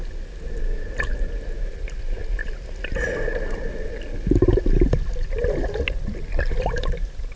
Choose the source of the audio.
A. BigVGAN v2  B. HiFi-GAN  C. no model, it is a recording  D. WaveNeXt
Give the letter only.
C